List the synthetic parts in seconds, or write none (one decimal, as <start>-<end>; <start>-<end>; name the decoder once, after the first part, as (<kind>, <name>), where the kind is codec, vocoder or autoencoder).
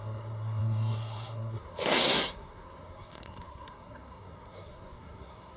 0.0-5.6 (codec, SNAC)